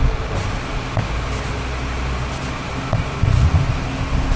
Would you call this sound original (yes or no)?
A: yes